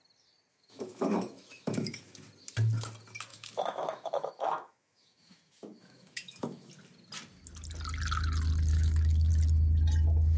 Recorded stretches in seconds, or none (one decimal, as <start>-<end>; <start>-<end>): 0.0-0.5; 2.0-3.3; 6.7-8.7; 9.3-10.4